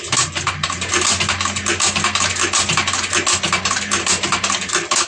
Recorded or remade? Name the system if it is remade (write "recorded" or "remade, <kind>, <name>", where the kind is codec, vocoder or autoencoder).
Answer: recorded